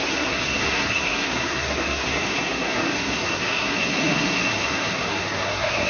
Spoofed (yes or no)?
yes